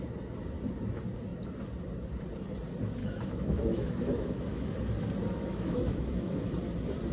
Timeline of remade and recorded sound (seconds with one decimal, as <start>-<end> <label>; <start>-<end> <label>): 0.0-3.0 recorded; 3.0-4.7 remade; 4.7-5.5 recorded; 5.5-6.4 remade; 6.4-7.1 recorded